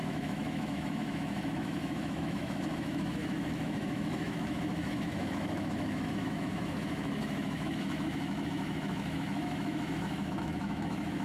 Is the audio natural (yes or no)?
no